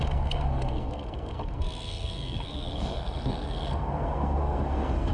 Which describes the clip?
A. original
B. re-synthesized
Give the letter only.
B